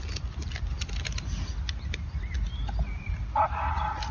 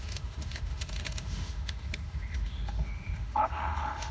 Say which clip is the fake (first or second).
second